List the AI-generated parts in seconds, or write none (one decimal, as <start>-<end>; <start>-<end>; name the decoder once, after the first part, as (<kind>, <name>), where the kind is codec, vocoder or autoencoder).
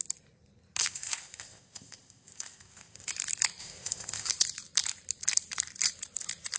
0.8-3.1 (codec, ZipCodec); 3.6-4.3